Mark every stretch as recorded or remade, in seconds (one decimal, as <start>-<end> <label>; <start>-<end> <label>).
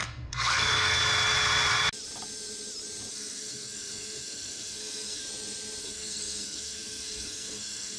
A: 0.0-1.0 remade; 1.0-3.1 recorded; 3.1-5.2 remade; 5.2-5.8 recorded; 5.8-8.0 remade